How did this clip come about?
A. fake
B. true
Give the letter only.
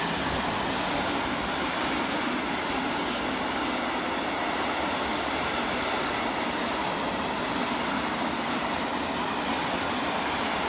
B